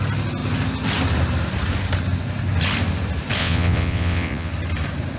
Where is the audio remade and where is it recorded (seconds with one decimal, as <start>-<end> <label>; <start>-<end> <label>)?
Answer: 0.0-3.4 recorded; 3.4-4.5 remade; 4.5-5.2 recorded